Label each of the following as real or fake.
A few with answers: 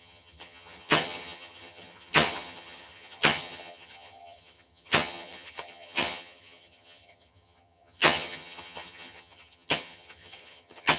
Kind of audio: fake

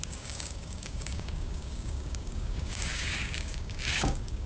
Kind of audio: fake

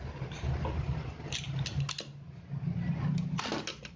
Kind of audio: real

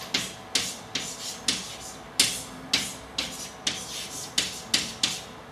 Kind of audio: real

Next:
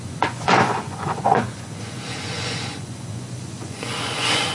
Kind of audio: fake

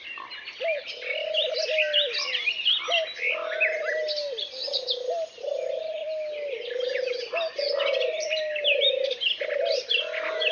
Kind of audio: real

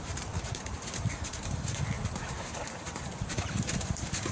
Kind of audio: fake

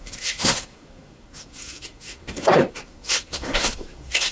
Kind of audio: fake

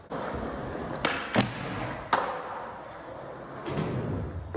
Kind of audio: real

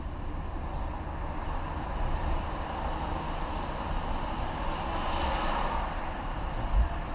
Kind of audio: real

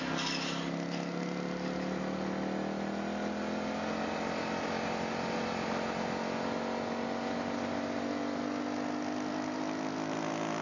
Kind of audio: real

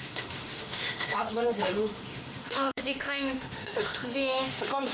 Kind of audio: fake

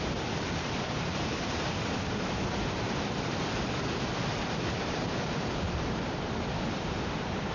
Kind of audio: fake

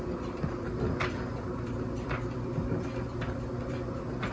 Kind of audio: fake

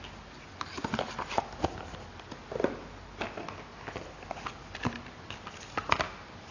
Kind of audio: real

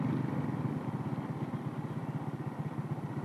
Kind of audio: real